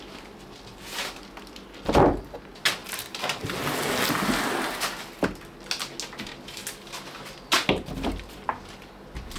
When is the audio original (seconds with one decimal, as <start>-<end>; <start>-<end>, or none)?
0.0-2.8; 3.6-9.4